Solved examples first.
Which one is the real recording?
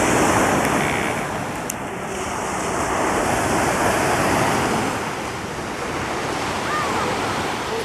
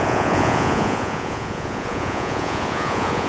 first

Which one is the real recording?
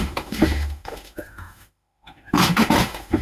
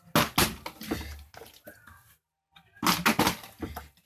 second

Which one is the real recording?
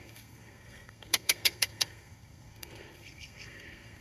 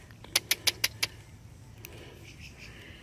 second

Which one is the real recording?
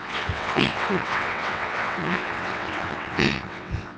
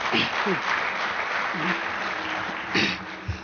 second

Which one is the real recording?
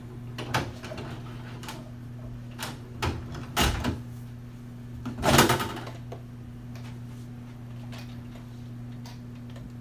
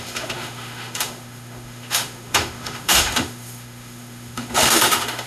first